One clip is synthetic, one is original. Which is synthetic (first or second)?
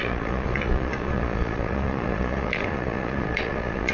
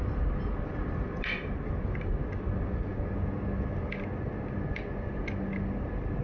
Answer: first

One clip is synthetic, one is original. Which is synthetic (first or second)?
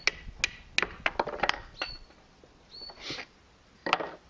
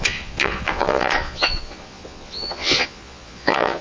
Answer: second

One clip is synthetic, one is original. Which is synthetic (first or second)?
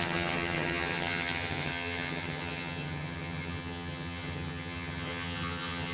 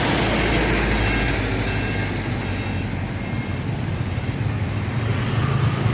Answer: first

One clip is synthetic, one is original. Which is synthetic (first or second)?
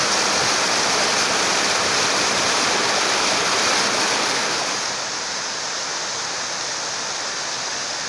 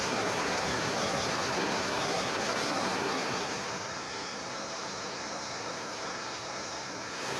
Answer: second